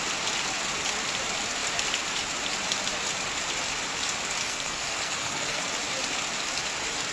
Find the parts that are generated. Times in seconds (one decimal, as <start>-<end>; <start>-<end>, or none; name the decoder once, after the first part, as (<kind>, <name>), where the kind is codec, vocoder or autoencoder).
4.4-5.7 (codec, SNAC)